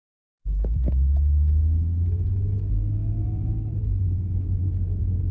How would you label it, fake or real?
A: fake